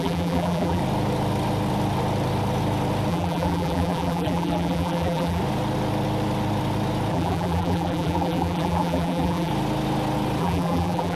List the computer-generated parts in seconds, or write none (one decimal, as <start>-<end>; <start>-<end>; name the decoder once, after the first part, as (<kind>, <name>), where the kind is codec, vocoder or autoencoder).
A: 0.0-0.8 (vocoder, BigVGAN v2); 3.1-5.4; 7.1-9.5; 10.4-11.1